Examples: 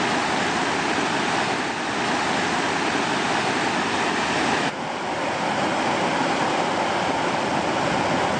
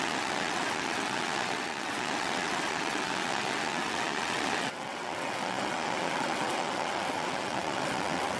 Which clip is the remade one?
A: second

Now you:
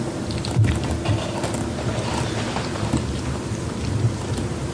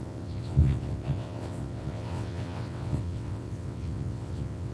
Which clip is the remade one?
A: second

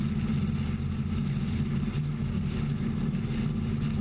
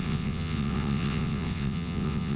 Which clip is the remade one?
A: second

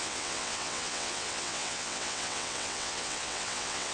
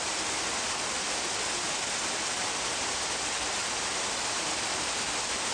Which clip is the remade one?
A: first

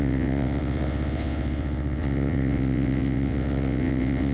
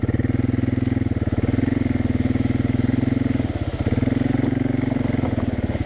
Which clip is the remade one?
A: first